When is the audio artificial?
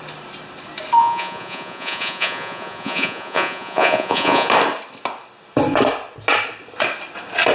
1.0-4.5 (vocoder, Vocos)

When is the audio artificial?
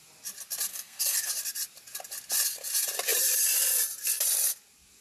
0.7-1.3 (codec, SNAC)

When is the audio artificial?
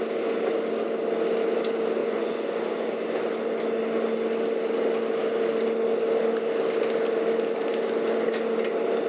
2.0-2.6 (vocoder, Vocos)